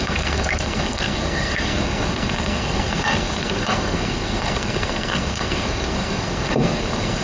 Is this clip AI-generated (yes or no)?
yes